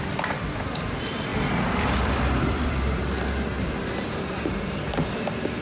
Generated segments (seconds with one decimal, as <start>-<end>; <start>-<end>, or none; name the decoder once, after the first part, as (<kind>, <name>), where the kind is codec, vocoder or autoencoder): 1.3-4.3 (vocoder, BigVGAN v2)